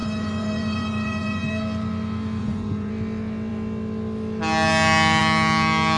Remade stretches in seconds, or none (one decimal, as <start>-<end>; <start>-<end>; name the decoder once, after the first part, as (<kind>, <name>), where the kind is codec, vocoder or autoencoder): 0.0-1.5 (vocoder, Vocos); 2.4-2.9